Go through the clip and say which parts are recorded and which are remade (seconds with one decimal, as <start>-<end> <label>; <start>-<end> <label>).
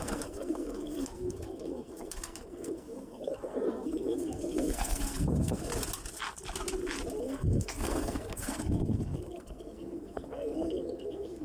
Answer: 0.0-5.7 remade; 5.7-7.2 recorded; 7.2-11.4 remade